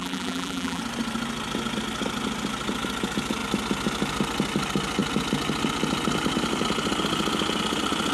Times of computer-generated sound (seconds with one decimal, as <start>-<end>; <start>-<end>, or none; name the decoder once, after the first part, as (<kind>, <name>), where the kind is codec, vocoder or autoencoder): 0.0-0.8 (vocoder, BigVGAN v2)